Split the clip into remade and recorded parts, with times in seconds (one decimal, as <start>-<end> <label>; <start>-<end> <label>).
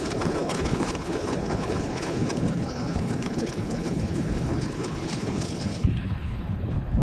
0.0-7.0 remade